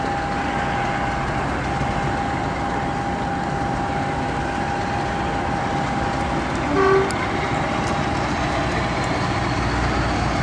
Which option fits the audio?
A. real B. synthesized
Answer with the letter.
A